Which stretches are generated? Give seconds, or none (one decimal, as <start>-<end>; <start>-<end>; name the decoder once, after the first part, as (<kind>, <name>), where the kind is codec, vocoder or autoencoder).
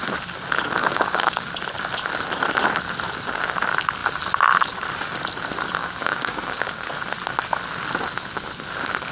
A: 0.8-1.5 (codec, DAC); 5.8-6.9